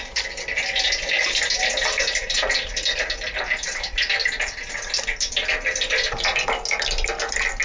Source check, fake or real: real